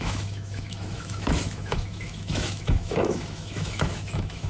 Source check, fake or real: fake